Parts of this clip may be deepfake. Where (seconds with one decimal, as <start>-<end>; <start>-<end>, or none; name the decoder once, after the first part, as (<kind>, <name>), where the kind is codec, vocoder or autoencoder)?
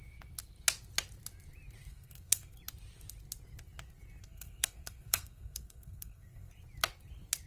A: 1.9-2.6 (codec, SNAC); 4.2-6.5